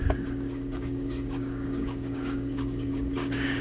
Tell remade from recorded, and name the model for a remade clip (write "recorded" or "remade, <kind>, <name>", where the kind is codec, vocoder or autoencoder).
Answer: remade, codec, DAC